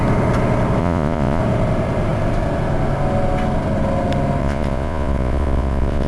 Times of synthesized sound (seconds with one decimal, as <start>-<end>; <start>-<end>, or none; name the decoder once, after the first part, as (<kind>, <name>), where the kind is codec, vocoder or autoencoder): 0.8-1.4 (vocoder, Vocos); 4.4-6.1